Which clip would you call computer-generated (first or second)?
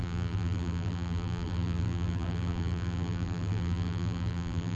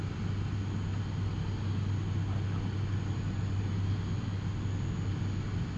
first